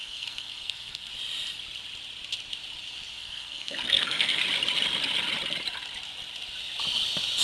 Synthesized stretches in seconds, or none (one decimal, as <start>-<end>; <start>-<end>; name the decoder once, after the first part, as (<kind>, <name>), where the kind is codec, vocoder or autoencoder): 0.0-1.1 (codec, SNAC); 3.1-4.4